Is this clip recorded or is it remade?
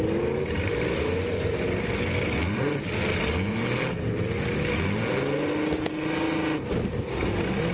recorded